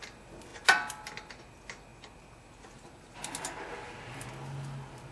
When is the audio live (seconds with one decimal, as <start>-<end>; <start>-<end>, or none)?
0.0-5.1